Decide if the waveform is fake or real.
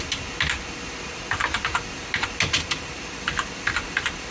real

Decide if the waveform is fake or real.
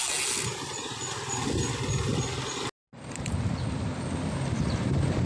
real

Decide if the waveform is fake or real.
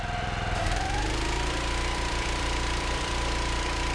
fake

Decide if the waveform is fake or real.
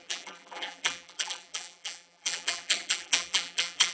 fake